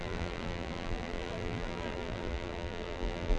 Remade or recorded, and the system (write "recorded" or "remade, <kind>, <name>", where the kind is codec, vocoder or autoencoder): remade, vocoder, BigVGAN v2